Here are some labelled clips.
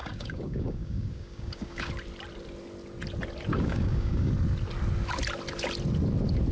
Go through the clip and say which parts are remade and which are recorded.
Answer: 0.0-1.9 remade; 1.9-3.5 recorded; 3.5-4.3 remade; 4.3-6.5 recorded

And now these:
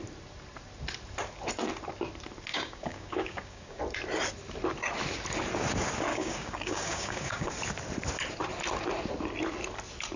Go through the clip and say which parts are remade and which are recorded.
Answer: 0.0-2.5 recorded; 2.5-3.8 remade; 3.8-6.1 recorded; 6.1-7.5 remade; 7.5-10.2 recorded

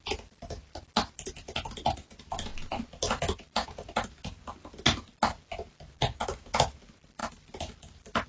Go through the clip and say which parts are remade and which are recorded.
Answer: 0.0-8.3 recorded

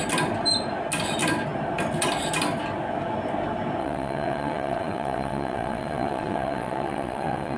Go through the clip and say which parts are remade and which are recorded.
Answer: 0.0-3.8 recorded; 3.8-7.6 remade

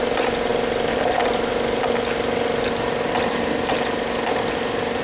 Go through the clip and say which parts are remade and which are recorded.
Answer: 0.0-5.0 recorded